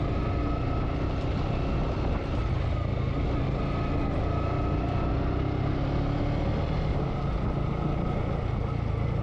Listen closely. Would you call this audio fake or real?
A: real